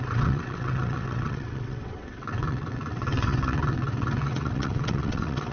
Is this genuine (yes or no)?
no